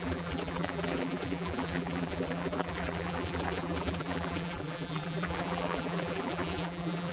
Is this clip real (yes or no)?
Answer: no